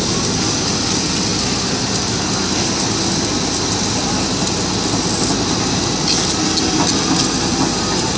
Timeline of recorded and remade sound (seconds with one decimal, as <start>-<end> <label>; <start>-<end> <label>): 0.0-8.2 recorded